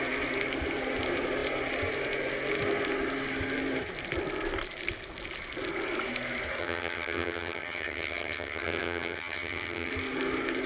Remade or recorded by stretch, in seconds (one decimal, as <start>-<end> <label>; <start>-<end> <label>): 0.0-6.6 recorded; 6.6-9.9 remade; 9.9-10.7 recorded